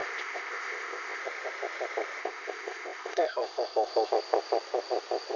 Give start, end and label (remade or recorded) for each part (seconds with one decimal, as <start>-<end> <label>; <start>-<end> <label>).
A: 0.0-1.2 remade; 1.2-2.2 recorded; 2.2-4.1 remade; 4.1-5.4 recorded